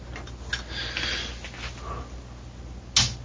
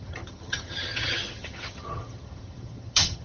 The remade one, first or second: second